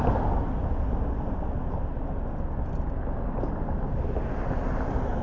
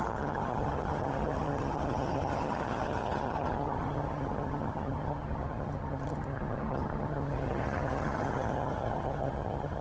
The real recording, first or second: first